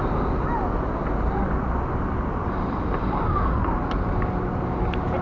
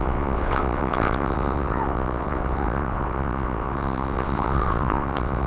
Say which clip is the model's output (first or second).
second